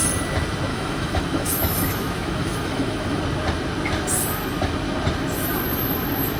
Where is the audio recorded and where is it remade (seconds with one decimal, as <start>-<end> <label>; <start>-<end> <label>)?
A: 0.0-0.7 recorded; 0.7-3.2 remade; 3.2-6.4 recorded